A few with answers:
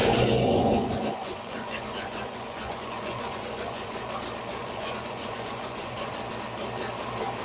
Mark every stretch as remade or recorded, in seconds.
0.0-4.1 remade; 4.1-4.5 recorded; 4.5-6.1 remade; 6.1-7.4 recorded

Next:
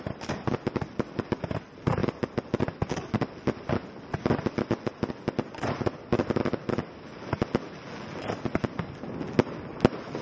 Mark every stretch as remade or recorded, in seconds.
0.0-10.2 recorded

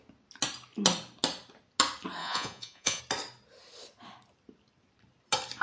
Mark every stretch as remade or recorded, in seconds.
0.0-2.2 recorded; 2.2-3.0 remade; 3.0-5.6 recorded

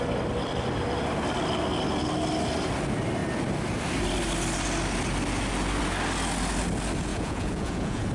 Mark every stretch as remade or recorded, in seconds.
0.0-7.1 recorded; 7.1-8.1 remade

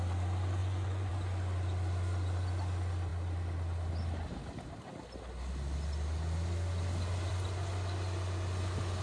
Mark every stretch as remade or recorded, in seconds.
0.0-0.6 recorded; 0.6-1.1 remade; 1.1-9.0 recorded

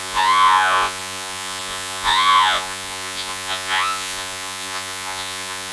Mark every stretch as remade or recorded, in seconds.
0.0-5.7 remade